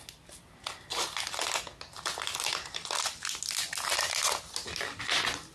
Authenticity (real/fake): real